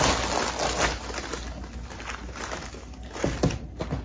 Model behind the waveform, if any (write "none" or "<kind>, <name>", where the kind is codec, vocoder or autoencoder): none